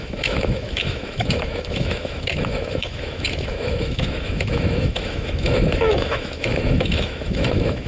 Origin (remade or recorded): remade